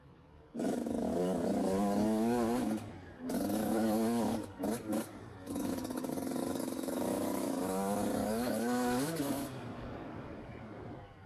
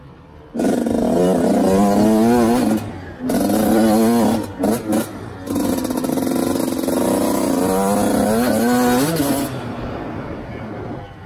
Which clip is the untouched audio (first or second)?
second